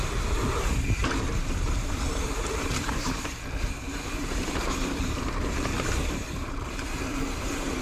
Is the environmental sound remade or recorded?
remade